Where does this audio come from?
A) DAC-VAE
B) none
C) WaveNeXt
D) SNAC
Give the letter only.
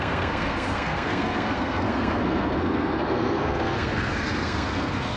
D